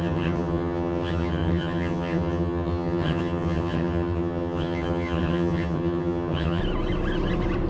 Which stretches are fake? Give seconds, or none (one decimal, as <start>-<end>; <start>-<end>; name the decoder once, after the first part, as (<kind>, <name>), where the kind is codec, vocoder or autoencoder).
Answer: 0.0-6.6 (vocoder, HiFi-GAN)